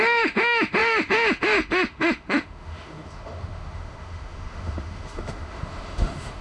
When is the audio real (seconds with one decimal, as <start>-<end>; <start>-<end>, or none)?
none